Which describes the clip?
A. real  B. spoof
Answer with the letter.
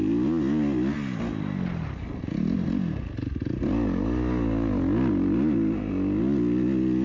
A